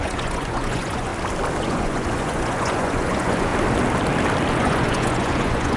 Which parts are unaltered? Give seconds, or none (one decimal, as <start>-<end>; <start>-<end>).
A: 1.1-1.6; 3.5-4.5